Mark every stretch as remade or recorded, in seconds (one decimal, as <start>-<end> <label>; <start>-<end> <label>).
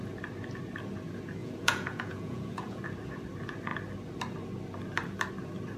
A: 0.0-1.4 recorded; 1.4-2.8 remade; 2.8-5.8 recorded